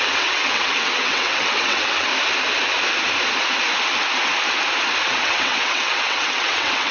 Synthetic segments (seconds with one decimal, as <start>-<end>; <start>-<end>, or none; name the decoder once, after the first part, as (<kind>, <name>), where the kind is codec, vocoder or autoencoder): 0.0-2.1 (vocoder, WaveNeXt); 5.1-6.9